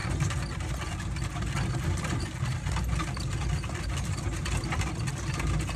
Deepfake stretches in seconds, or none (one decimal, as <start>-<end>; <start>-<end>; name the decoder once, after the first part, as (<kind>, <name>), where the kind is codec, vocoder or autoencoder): none